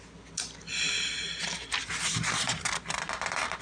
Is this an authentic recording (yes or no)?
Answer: yes